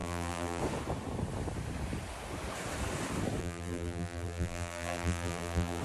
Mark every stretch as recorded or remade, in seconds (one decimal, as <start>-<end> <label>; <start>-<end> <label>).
0.0-0.6 remade; 0.6-3.4 recorded; 3.4-5.8 remade